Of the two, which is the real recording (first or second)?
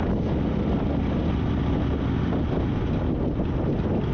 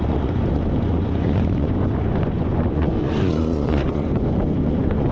first